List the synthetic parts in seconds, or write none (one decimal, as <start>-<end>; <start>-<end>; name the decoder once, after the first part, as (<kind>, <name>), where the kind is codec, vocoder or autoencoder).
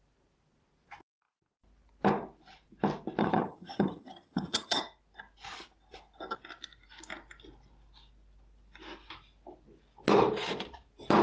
3.2-4.8 (vocoder, HiFi-GAN)